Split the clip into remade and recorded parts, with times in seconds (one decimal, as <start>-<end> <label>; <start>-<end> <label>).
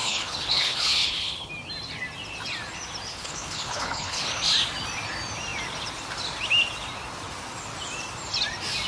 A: 0.0-1.5 remade; 1.5-3.1 recorded; 3.1-4.4 remade; 4.4-8.9 recorded